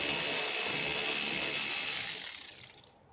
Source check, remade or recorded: recorded